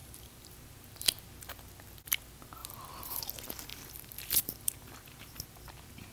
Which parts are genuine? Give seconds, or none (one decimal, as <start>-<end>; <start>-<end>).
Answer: 0.7-3.7; 5.3-6.1